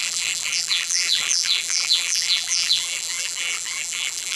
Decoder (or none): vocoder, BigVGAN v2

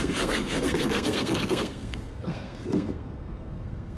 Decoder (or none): codec, SNAC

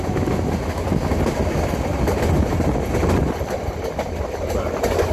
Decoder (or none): none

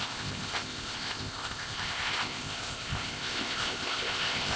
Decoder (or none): codec, ZipCodec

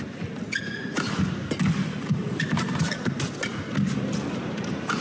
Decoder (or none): none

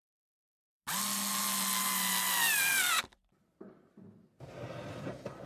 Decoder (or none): none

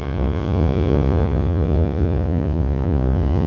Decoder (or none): vocoder, Vocos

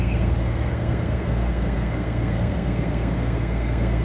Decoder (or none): codec, SNAC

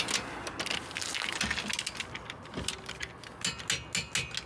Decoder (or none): none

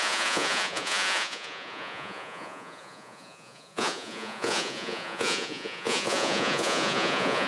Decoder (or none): vocoder, Vocos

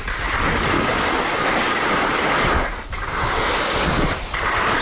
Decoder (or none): none